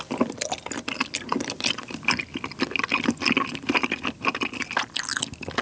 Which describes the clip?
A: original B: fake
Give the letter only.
A